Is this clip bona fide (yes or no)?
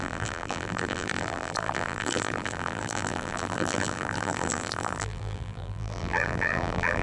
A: no